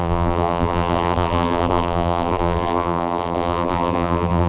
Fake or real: fake